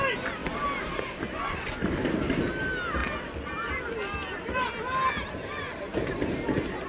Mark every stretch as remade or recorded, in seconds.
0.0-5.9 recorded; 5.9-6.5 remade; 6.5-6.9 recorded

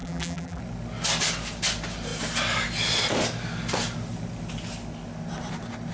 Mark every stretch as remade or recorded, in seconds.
0.0-0.6 remade; 0.6-5.9 recorded

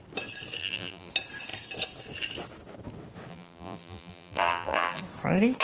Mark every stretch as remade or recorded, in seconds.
0.0-0.6 recorded; 0.6-1.1 remade; 1.1-3.3 recorded; 3.3-5.0 remade; 5.0-5.6 recorded

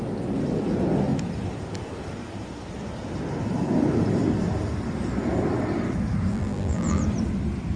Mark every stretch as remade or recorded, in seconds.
0.0-6.3 recorded; 6.3-7.0 remade; 7.0-7.8 recorded

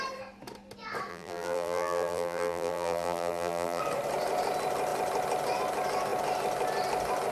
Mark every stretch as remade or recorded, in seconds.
0.0-1.1 recorded; 1.1-3.8 remade; 3.8-7.3 recorded

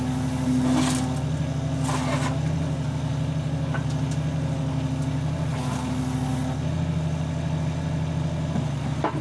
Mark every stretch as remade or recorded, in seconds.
0.0-3.1 recorded; 3.1-3.9 remade; 3.9-9.2 recorded

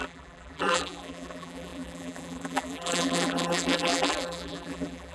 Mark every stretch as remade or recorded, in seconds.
0.0-5.1 remade